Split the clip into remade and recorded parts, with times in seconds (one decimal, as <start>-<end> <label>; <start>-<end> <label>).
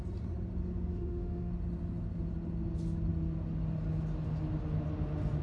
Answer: 0.0-0.9 recorded; 0.9-1.5 remade; 1.5-5.4 recorded